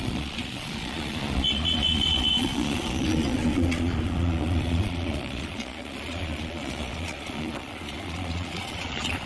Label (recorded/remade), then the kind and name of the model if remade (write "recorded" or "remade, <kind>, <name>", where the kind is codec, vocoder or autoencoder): remade, vocoder, Vocos